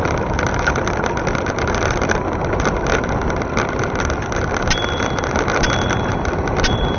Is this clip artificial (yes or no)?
yes